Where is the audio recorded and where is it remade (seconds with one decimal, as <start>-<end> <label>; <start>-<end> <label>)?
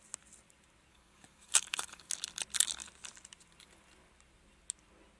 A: 0.0-0.9 recorded; 0.9-2.1 remade; 2.1-5.2 recorded